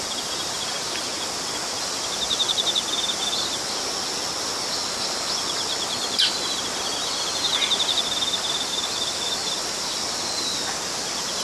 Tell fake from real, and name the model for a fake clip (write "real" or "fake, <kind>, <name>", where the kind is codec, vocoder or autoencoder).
real